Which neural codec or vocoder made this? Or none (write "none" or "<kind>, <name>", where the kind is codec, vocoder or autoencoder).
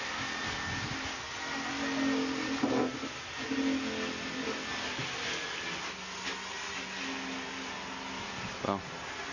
none